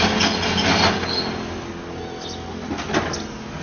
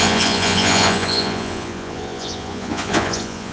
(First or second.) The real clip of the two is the first